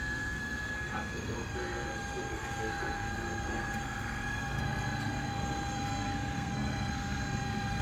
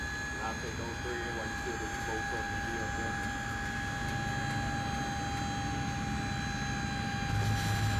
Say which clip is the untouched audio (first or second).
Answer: second